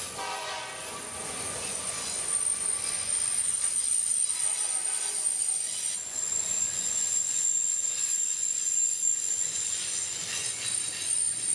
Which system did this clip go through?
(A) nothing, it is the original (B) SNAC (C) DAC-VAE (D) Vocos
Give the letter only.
D